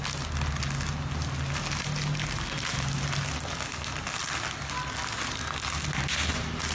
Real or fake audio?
real